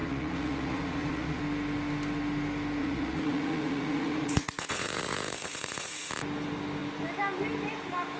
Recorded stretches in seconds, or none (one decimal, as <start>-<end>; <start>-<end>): 1.4-2.8; 6.1-8.2